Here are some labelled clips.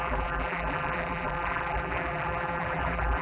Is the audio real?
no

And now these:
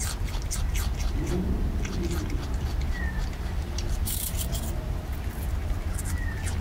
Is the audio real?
yes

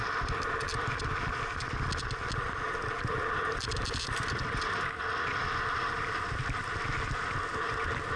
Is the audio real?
yes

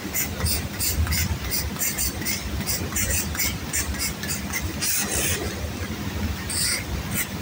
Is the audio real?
yes